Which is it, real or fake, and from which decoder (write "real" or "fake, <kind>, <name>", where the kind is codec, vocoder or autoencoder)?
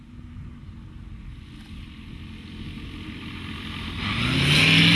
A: real